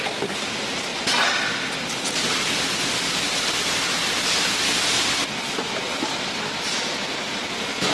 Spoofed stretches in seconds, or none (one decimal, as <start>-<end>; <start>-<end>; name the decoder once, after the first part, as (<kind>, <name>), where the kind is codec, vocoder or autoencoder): none